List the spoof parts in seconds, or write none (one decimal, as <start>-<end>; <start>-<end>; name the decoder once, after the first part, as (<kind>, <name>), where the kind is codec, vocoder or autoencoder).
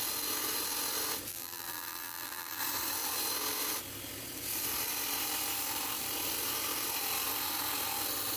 1.3-2.6 (vocoder, BigVGAN v2)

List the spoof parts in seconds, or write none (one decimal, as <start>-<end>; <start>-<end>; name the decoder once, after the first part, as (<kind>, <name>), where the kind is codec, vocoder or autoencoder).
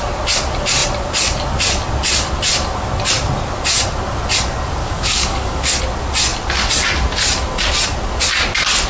4.8-5.8 (codec, DAC)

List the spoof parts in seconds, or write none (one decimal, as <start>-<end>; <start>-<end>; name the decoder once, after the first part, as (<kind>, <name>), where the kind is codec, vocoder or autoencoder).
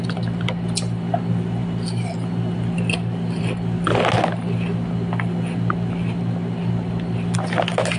none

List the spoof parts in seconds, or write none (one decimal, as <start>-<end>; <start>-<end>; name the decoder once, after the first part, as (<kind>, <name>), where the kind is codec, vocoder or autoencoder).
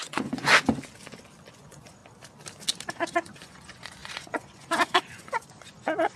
0.0-0.5 (vocoder, Vocos); 1.5-2.0; 2.9-6.2